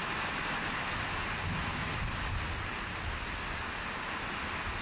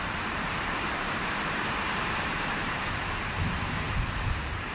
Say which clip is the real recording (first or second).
first